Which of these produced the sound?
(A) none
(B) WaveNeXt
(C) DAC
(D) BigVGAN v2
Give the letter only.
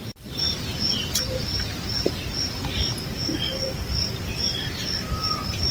D